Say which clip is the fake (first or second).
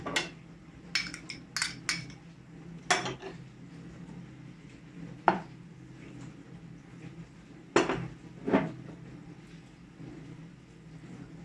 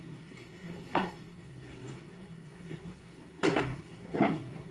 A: second